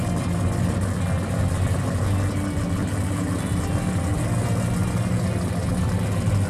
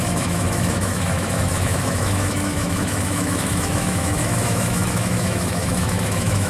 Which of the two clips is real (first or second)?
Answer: first